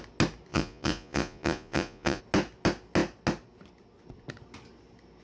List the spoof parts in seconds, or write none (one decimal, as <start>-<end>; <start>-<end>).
0.5-2.2